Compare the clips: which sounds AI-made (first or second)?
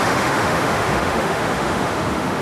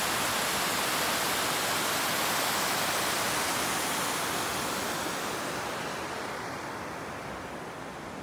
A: first